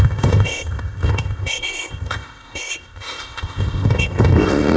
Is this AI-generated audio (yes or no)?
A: yes